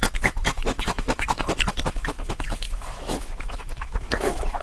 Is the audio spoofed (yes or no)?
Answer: yes